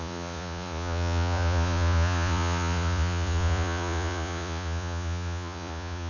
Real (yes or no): no